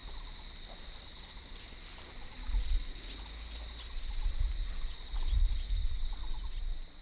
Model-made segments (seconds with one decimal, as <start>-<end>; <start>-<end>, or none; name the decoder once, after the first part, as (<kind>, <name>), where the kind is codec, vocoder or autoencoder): none